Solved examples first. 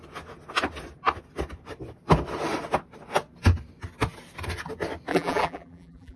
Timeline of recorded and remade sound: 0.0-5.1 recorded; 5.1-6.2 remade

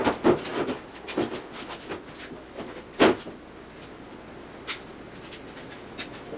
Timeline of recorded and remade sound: 0.0-6.4 recorded

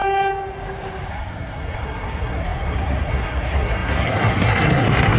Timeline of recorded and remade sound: 0.0-1.1 recorded; 1.1-5.2 remade

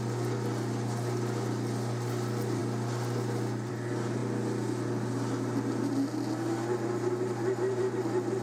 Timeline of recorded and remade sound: 0.0-8.4 recorded

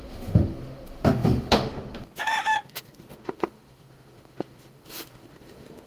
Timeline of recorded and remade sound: 0.0-5.9 remade

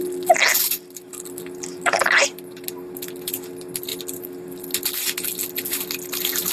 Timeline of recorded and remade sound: 0.0-6.5 recorded